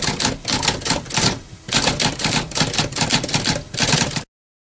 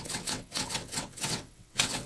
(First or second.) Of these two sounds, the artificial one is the second